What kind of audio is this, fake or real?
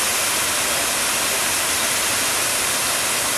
real